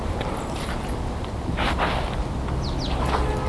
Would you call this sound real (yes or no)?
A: yes